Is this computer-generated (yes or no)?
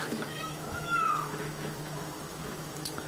yes